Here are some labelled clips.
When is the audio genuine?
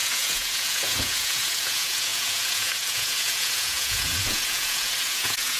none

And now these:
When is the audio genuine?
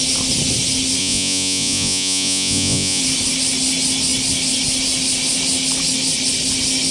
0.0-1.0; 3.0-6.9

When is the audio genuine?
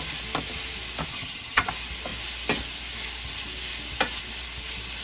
0.0-1.1; 1.7-5.0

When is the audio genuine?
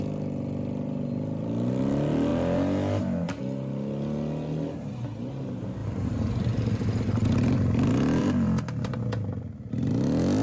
0.0-5.8; 7.0-8.2; 9.0-10.4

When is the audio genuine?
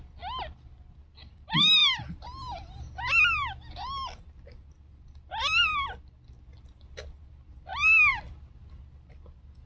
0.0-9.7